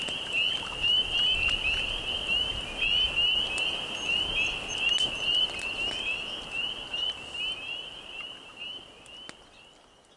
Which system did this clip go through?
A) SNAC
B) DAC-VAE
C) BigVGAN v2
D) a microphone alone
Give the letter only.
D